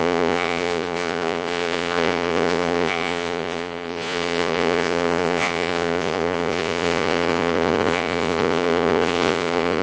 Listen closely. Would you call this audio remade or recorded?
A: remade